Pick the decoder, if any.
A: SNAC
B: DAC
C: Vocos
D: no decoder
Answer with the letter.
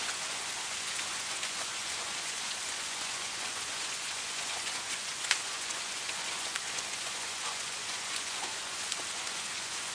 C